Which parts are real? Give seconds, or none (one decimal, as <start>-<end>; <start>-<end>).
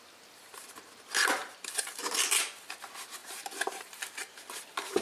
0.0-1.4; 2.1-3.2; 4.5-5.0